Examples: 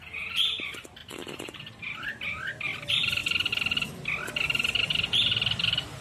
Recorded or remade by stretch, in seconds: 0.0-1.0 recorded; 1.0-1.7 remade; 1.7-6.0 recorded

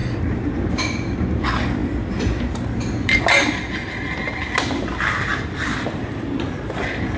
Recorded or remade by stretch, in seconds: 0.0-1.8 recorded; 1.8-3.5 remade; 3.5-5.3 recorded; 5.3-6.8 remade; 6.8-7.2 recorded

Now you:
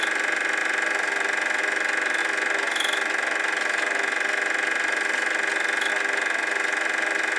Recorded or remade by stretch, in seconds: 0.0-7.4 recorded